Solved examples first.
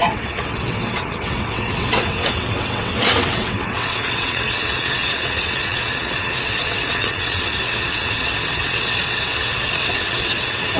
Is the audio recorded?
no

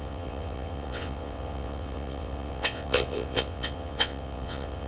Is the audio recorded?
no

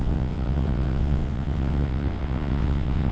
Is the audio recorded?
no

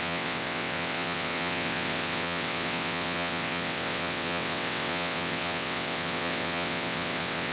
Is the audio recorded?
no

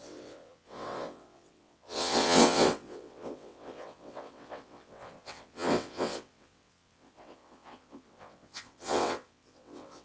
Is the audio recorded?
no